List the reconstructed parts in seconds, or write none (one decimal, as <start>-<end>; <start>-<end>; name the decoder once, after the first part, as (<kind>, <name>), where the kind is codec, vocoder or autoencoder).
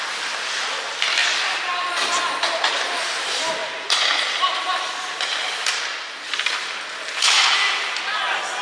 3.6-4.6 (vocoder, BigVGAN v2); 5.3-7.6